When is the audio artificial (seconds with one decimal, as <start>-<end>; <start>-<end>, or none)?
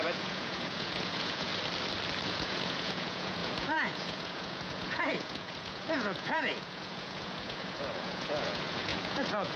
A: 0.0-1.5; 2.2-9.6